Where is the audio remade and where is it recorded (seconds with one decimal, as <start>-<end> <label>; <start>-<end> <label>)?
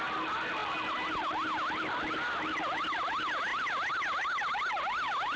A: 0.0-5.4 recorded